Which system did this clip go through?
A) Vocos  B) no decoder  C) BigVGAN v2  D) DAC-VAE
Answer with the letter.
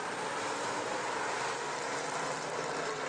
B